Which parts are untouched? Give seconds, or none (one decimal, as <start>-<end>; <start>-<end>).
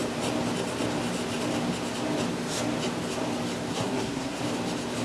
0.0-3.7; 4.4-5.0